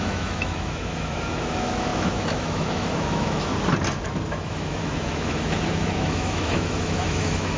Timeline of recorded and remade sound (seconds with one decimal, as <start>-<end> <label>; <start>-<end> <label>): 0.0-3.5 remade; 3.5-4.3 recorded; 4.3-7.6 remade